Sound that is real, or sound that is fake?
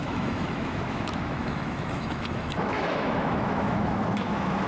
fake